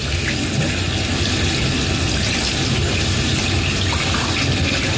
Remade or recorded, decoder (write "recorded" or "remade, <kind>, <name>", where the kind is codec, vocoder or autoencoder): recorded